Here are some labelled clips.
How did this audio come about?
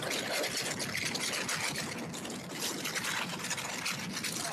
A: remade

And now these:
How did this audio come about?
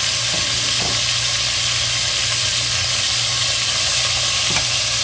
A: recorded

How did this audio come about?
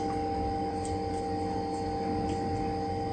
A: recorded